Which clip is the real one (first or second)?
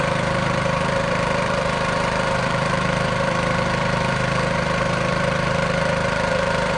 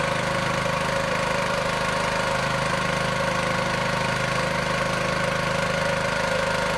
second